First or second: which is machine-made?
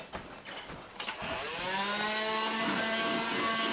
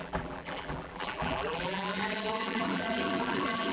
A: second